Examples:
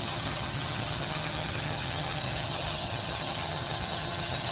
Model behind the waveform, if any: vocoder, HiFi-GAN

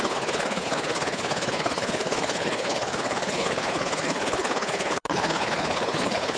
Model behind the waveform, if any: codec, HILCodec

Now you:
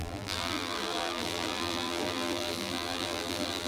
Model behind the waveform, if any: vocoder, BigVGAN v2